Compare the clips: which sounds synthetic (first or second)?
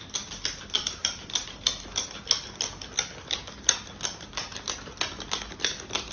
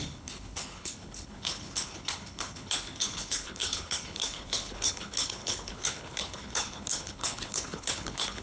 second